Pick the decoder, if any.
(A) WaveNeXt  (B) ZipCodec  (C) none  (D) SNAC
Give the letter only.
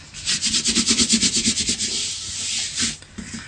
C